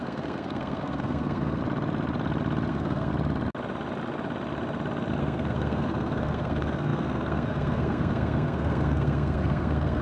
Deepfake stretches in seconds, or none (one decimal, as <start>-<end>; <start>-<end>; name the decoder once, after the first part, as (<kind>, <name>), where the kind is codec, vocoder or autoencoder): 0.0-1.6 (codec, SNAC); 2.7-3.1; 5.2-10.0